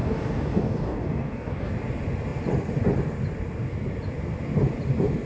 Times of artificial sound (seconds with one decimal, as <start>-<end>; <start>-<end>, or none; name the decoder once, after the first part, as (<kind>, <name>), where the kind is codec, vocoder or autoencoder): 0.0-1.7 (codec, DAC)